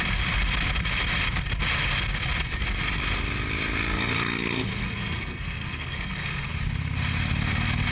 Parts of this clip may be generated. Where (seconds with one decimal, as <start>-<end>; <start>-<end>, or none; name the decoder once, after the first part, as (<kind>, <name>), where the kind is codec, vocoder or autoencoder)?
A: 4.8-6.5 (codec, SNAC)